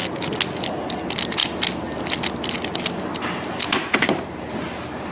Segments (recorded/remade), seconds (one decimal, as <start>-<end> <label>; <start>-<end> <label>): 0.0-5.1 recorded